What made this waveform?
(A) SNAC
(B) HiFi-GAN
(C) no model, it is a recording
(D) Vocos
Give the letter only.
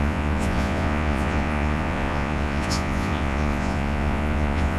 D